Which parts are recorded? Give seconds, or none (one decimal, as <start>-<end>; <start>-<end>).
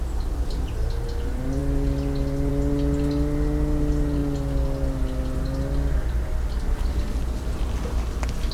0.0-8.5